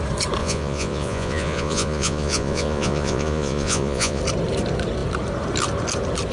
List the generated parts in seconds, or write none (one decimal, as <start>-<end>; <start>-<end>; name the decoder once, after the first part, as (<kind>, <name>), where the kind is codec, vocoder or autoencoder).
0.4-4.2 (vocoder, Vocos)